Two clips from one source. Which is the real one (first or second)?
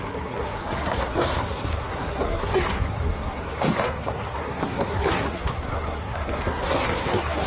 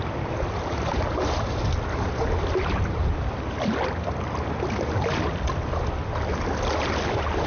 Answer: second